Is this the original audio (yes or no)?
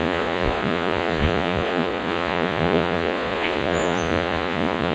no